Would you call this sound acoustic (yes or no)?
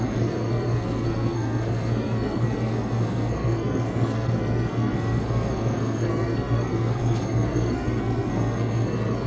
no